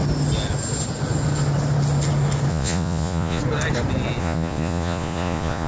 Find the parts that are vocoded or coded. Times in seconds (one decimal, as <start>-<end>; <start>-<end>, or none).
2.5-3.4; 4.2-5.7